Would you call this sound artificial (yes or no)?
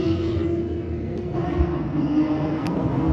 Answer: yes